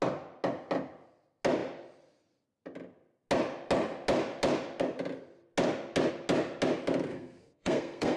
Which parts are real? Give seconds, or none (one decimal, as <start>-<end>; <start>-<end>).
0.0-7.1